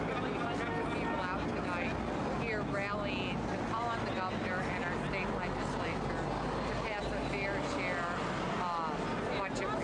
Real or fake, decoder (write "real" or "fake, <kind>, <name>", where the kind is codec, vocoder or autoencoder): real